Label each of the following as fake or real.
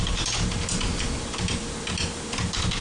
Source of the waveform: fake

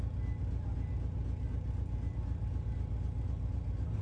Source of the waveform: real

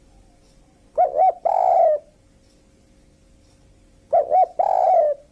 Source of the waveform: real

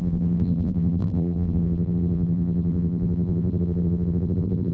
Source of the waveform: fake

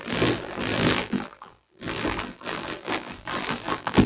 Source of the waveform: fake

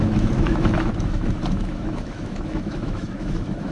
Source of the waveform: fake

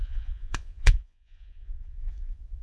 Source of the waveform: fake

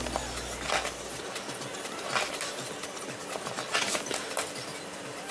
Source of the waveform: fake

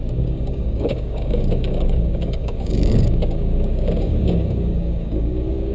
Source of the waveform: fake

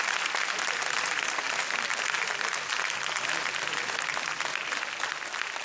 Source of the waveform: real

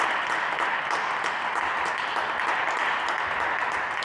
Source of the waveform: real